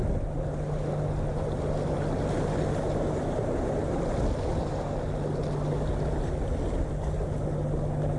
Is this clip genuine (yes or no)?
yes